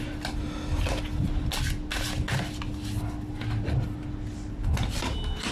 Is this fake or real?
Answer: real